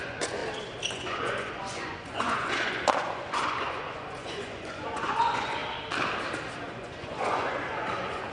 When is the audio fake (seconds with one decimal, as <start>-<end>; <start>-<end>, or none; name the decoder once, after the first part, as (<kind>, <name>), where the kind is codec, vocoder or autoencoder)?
0.0-0.4 (vocoder, Vocos); 0.9-5.6; 6.7-8.3